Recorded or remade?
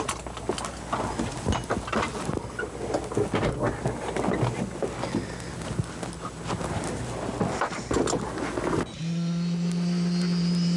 recorded